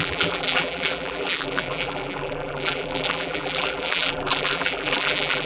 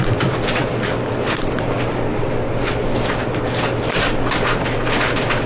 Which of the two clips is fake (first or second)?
first